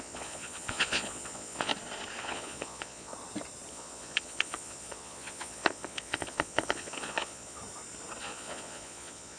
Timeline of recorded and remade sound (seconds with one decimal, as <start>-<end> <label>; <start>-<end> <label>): 0.0-1.7 remade; 1.7-2.2 recorded; 2.2-3.1 remade; 3.1-3.7 recorded; 3.7-7.6 remade; 7.6-8.2 recorded; 8.2-9.4 remade